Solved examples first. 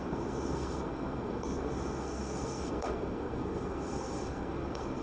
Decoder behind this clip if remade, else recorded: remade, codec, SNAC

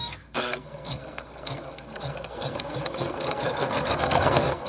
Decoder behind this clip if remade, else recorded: remade, codec, SNAC